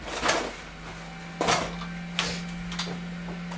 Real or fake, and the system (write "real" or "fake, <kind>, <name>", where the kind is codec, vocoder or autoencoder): real